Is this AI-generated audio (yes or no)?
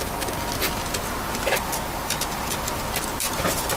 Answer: no